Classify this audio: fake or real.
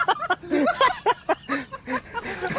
real